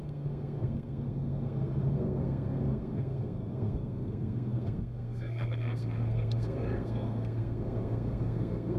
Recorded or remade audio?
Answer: remade